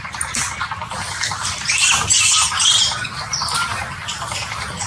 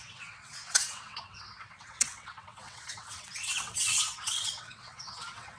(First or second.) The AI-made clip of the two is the second